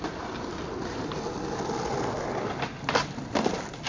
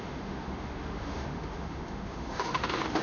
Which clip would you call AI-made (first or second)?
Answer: second